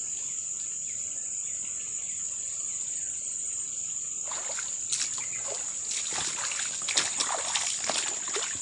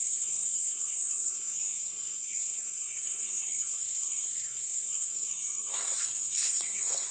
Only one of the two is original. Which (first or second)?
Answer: first